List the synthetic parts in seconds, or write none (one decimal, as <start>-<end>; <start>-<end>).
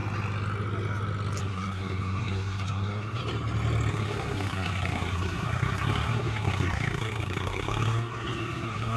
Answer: 1.4-3.2; 3.9-9.0